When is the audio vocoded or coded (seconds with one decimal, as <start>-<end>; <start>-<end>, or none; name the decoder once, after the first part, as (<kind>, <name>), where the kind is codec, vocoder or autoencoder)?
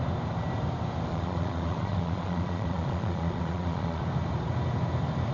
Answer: 1.1-4.0 (vocoder, Vocos)